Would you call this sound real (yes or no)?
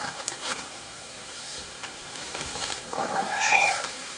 no